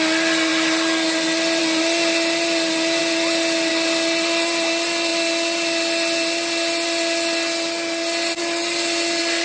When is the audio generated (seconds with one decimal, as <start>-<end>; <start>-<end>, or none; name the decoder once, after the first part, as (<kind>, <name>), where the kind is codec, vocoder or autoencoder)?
none